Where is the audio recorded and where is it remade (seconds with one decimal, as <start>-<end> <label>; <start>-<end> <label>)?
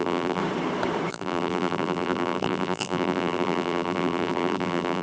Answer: 0.0-0.4 remade; 0.4-1.1 recorded; 1.1-5.0 remade